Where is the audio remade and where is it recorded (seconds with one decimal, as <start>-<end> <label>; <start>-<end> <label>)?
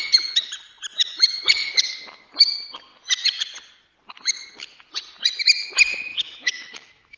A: 0.0-6.1 recorded; 6.1-7.2 remade